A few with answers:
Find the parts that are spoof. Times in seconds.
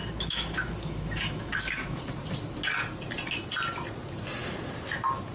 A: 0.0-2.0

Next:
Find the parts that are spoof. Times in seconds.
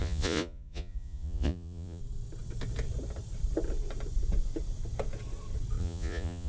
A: 0.0-2.0; 5.8-6.5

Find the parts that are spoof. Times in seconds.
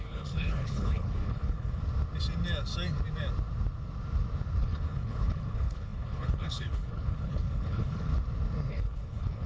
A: 0.0-1.8; 4.6-8.1; 8.7-9.5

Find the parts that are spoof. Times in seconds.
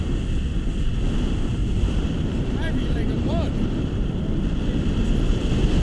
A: 1.6-4.2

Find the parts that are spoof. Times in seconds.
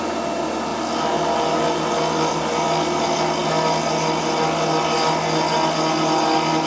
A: none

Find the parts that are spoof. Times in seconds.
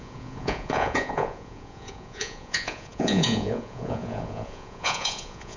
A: 0.0-5.6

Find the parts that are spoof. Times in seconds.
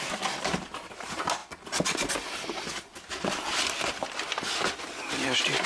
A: 0.0-1.4; 4.8-5.7